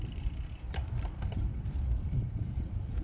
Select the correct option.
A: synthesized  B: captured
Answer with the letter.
B